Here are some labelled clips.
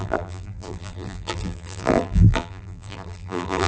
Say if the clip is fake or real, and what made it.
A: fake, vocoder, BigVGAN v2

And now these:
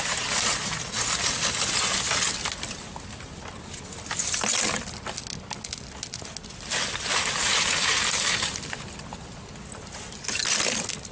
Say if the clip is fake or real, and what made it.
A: real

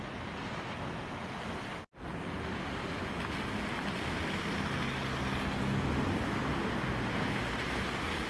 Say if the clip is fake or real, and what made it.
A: real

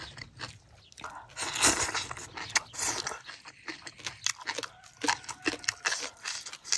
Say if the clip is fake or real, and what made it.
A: real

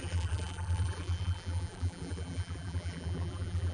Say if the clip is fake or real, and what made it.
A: fake, vocoder, BigVGAN v2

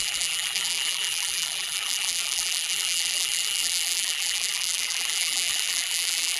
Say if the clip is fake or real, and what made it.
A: fake, vocoder, BigVGAN v2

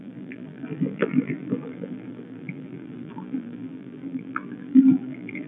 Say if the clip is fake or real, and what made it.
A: fake, vocoder, BigVGAN v2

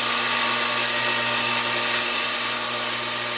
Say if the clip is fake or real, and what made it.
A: real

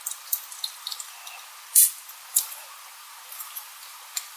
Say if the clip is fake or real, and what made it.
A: fake, vocoder, BigVGAN v2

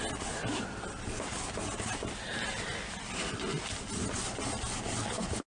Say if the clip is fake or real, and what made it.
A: real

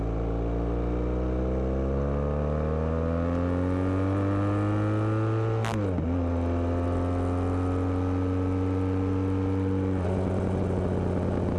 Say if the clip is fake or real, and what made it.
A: real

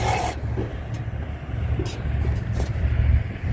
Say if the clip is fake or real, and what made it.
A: real